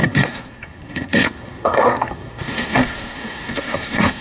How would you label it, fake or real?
fake